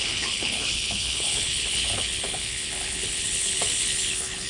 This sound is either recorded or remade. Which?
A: remade